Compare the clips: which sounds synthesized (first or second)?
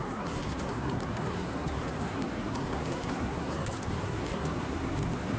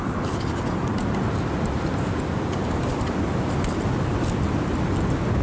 first